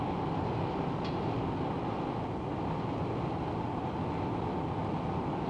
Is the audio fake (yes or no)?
no